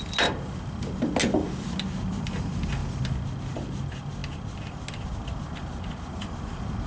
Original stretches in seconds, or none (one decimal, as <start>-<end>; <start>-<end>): 0.0-6.9